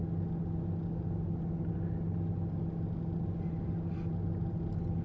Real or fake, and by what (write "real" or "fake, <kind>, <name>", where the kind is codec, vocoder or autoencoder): real